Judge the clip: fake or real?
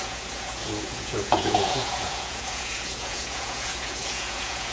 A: fake